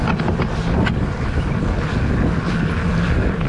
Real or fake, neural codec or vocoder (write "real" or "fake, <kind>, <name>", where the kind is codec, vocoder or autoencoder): real